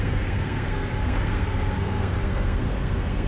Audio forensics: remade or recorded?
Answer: remade